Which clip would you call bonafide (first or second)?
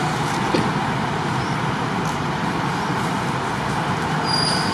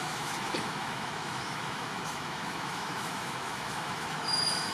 first